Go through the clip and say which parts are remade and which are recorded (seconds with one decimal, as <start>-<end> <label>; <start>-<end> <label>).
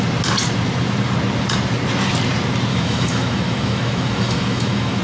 0.0-2.7 recorded; 2.7-5.0 remade